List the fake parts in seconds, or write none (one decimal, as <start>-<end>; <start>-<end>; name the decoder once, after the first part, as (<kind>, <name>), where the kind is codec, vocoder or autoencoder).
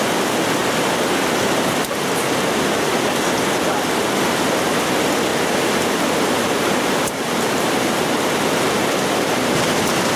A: 5.3-8.3 (vocoder, BigVGAN v2)